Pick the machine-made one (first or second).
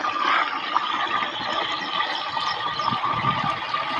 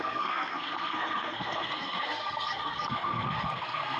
second